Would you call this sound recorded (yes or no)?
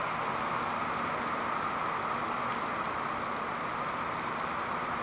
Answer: yes